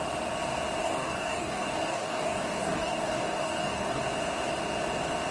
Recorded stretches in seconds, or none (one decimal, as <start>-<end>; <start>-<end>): 0.0-0.8; 4.0-5.3